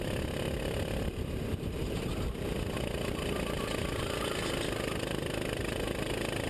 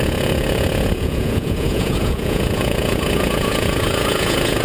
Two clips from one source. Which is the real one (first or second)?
first